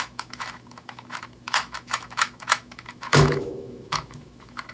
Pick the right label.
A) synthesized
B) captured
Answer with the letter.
A